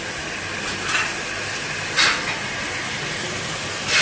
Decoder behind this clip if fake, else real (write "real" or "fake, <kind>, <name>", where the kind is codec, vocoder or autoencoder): real